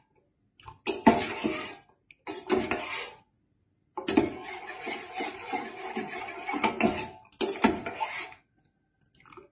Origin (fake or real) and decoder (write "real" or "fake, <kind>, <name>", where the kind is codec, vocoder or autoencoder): real